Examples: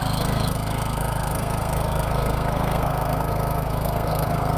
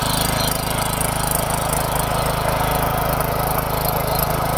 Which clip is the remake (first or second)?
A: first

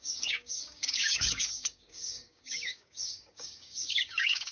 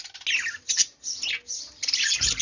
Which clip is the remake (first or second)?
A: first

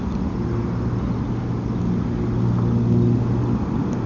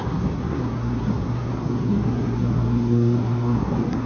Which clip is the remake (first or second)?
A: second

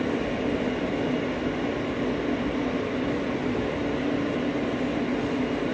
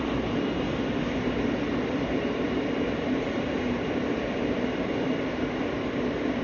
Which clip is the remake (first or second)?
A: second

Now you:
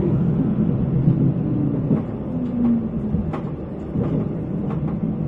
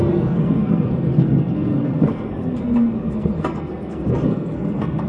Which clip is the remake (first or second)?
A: second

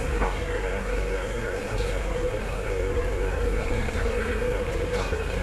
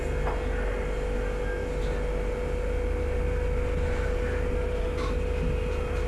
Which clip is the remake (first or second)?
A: first